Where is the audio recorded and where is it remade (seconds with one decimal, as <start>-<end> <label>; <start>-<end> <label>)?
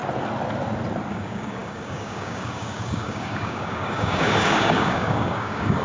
0.0-1.1 recorded; 1.1-5.8 remade